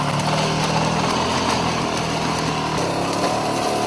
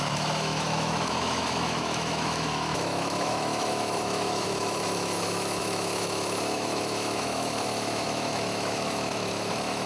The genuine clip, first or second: first